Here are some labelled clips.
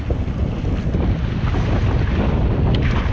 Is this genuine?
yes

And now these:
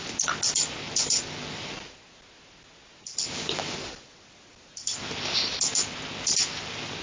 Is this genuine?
yes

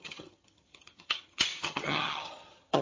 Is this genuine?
no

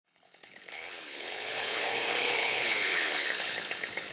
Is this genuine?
no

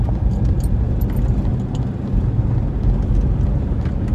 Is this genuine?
yes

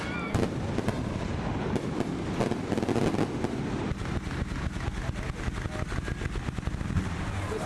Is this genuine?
yes